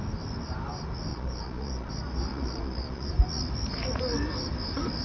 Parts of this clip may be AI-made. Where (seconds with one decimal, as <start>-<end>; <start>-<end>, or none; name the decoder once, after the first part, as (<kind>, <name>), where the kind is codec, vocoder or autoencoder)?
1.1-1.9 (vocoder, Vocos); 2.3-3.1